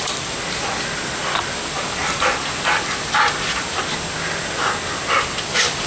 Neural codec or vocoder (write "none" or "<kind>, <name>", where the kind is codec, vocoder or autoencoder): none